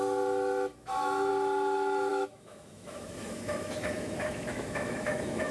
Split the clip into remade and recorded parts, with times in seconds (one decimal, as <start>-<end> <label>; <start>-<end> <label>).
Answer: 0.0-0.7 recorded; 0.7-1.3 remade; 1.3-2.1 recorded; 2.1-5.5 remade